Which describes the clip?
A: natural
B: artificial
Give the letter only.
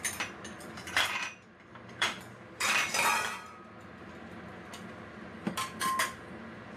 B